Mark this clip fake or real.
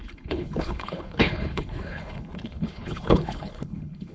fake